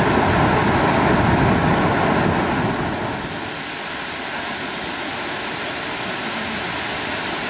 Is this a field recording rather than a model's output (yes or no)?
yes